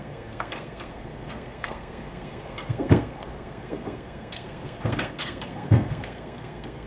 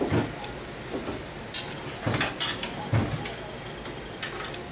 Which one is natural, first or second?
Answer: second